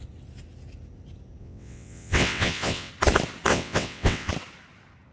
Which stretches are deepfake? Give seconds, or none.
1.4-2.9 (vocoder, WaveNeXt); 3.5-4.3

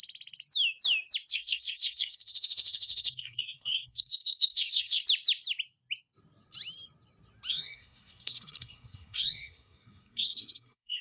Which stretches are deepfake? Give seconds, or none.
1.3-5.0 (codec, SNAC); 7.5-11.0